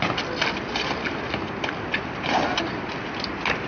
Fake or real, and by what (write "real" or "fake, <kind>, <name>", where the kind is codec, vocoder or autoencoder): real